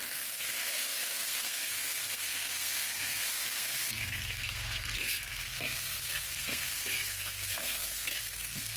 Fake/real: fake